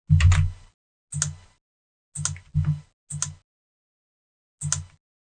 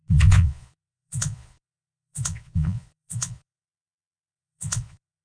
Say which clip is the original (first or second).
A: first